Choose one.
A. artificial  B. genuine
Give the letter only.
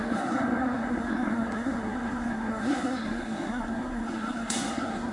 A